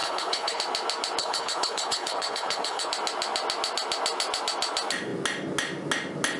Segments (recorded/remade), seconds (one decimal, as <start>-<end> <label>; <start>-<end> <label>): 0.0-0.6 remade; 0.6-1.2 recorded; 1.2-2.9 remade; 2.9-6.4 recorded